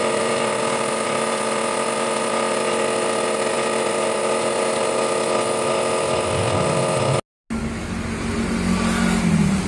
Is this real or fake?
real